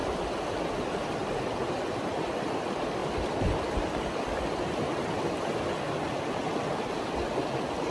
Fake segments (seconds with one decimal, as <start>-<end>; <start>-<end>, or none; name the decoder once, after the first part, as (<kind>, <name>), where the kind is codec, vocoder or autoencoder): 1.2-2.5 (vocoder, BigVGAN v2); 3.0-6.2